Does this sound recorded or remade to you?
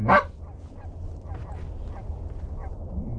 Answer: recorded